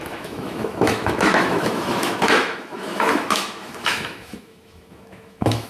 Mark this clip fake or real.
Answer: fake